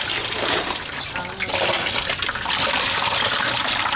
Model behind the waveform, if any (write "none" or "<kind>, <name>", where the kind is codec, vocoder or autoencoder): none